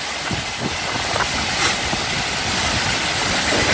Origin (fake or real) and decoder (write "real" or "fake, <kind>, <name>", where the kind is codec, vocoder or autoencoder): real